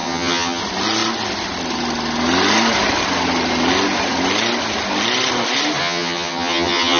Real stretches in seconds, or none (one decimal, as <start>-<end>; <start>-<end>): 0.6-5.8